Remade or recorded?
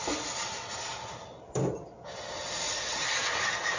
recorded